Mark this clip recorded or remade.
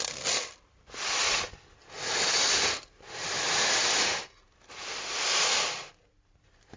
recorded